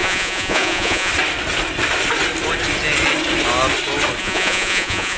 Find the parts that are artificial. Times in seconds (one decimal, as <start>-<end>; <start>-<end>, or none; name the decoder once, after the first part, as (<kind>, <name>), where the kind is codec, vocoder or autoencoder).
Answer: 0.0-1.1 (vocoder, Vocos); 4.2-5.2

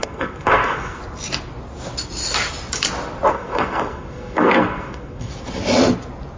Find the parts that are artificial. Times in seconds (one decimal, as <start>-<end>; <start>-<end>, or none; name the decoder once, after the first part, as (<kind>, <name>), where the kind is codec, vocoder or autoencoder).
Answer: 0.0-1.0 (codec, SNAC); 3.3-5.3

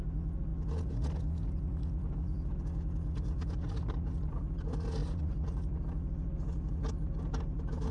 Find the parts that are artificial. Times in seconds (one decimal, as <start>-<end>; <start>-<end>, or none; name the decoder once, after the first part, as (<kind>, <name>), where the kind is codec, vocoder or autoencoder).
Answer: none

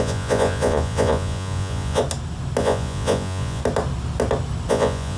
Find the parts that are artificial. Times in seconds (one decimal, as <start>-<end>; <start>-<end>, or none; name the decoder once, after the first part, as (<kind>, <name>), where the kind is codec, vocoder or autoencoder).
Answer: 0.0-2.0 (vocoder, Vocos); 2.6-3.6; 4.7-5.2

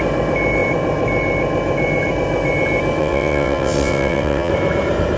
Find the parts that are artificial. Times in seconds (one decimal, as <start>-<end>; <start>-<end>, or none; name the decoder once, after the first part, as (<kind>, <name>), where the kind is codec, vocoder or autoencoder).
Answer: 3.0-4.5 (vocoder, WaveNeXt)

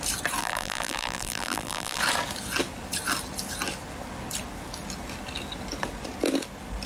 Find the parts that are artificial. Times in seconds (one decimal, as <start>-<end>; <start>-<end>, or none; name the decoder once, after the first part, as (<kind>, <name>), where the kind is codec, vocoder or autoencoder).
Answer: 0.4-2.0 (vocoder, BigVGAN v2)

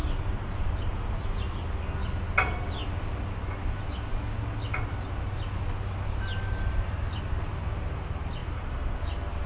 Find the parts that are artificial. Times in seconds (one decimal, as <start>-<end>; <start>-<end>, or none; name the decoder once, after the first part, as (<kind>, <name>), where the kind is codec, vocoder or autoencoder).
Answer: 0.0-1.4 (vocoder, BigVGAN v2); 8.4-9.0

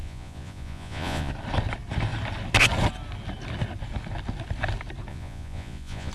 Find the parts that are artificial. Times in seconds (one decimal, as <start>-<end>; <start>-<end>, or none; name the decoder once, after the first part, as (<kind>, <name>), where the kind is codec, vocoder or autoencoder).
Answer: 0.0-1.3 (vocoder, Vocos); 5.1-6.1